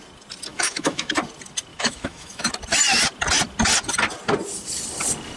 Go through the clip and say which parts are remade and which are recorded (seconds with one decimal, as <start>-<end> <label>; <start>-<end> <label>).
0.0-0.5 recorded; 0.5-1.1 remade; 1.1-1.7 recorded; 1.7-2.5 remade; 2.5-5.4 recorded